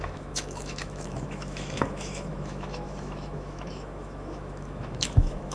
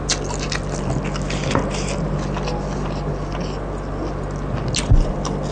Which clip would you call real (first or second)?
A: second